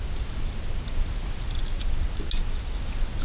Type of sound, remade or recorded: recorded